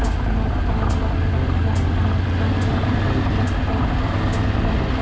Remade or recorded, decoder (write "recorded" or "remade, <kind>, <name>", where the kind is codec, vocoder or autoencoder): recorded